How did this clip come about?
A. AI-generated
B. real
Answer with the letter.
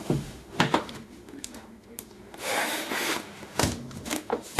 A